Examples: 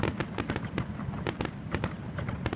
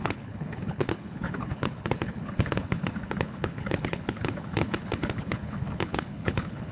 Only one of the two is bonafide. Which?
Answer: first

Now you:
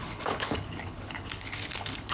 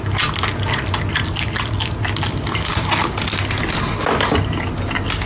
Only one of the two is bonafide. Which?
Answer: second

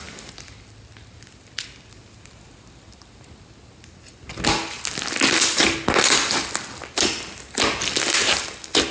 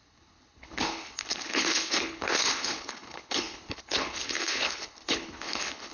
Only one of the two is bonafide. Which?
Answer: first